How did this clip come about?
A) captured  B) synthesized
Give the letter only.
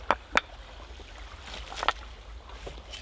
A